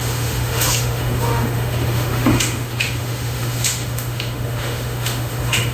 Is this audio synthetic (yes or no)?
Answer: yes